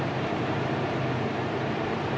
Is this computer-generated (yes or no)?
yes